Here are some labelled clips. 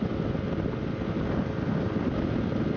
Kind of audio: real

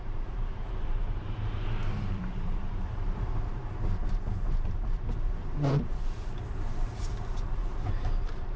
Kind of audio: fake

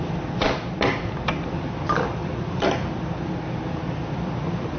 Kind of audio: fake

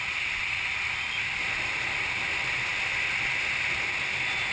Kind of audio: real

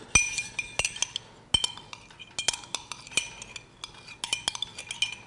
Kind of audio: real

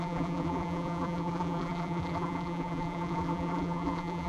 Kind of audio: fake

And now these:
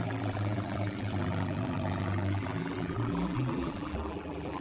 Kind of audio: fake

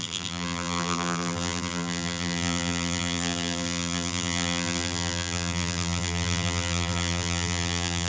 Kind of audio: fake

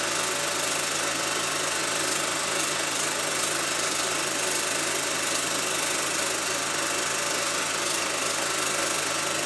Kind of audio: real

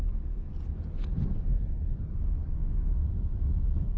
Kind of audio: real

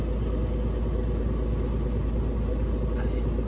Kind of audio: real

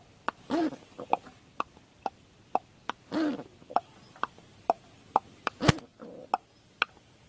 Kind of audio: real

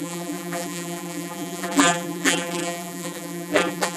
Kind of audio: fake